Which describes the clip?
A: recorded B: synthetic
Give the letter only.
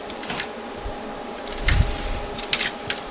A